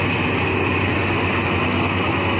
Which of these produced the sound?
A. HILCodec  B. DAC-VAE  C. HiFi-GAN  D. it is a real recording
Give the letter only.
D